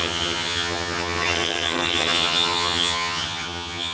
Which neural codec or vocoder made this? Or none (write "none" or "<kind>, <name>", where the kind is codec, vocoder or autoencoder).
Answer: vocoder, HiFi-GAN